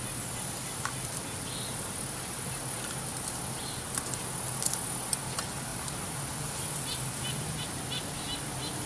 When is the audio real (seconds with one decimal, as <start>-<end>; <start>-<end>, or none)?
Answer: 0.0-5.7; 6.8-8.9